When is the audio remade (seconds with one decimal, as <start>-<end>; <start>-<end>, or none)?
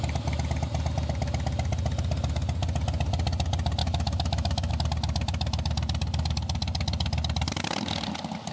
3.8-4.7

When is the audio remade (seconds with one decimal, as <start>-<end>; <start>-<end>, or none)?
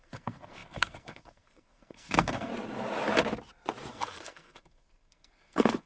0.0-2.5; 3.9-5.9